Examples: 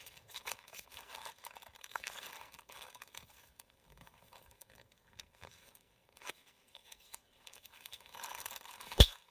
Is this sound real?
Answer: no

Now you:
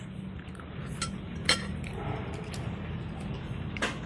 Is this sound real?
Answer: yes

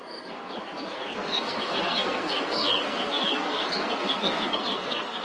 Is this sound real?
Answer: no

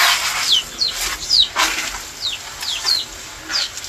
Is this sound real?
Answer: yes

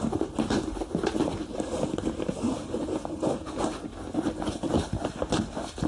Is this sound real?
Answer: yes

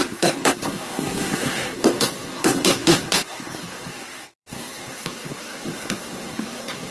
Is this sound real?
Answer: no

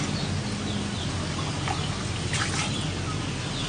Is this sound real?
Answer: yes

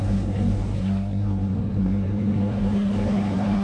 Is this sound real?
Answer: no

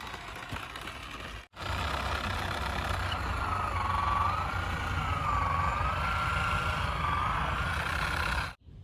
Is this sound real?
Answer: yes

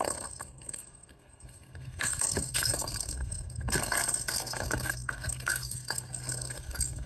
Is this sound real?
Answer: no